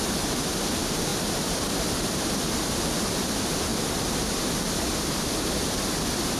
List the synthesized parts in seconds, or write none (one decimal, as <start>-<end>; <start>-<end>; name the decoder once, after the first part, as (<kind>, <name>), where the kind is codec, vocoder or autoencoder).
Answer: 0.0-1.1 (vocoder, BigVGAN v2); 3.1-3.7; 5.5-6.4